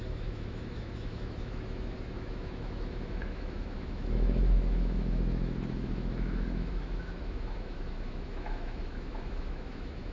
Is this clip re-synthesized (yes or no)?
yes